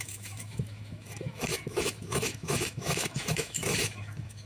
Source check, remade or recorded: remade